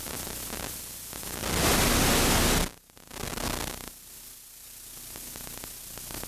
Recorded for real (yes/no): yes